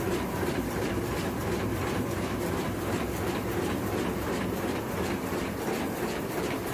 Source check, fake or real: fake